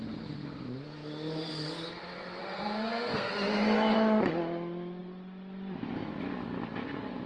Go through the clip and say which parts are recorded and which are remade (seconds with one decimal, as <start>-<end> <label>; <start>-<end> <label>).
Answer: 0.0-2.4 recorded; 2.4-3.3 remade; 3.3-7.3 recorded

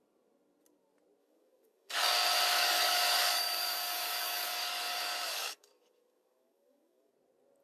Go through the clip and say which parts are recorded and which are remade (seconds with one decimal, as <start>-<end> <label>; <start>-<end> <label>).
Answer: 0.0-1.2 recorded; 1.2-2.1 remade; 2.1-2.5 recorded; 2.5-7.1 remade; 7.1-7.6 recorded